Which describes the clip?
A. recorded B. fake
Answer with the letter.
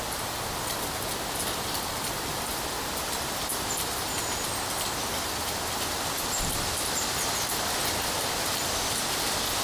A